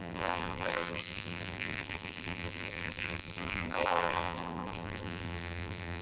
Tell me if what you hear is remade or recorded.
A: remade